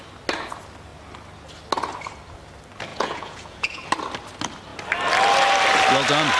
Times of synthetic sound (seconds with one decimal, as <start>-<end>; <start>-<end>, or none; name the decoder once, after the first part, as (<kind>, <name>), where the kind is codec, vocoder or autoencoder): 2.9-3.8 (vocoder, Vocos)